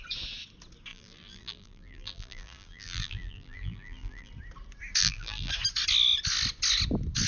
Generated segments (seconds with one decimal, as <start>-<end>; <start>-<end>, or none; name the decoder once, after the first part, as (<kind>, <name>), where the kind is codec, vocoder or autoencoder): 0.9-4.3 (vocoder, BigVGAN v2); 5.0-5.5